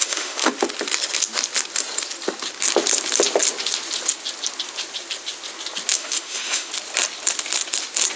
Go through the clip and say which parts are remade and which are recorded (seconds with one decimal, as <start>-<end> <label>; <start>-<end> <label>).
0.0-0.5 remade; 0.5-5.9 recorded; 5.9-6.7 remade; 6.7-8.2 recorded